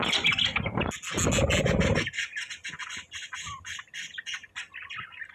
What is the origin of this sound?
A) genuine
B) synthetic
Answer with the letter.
A